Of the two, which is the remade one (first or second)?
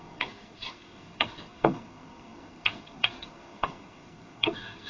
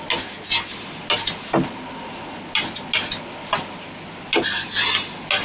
first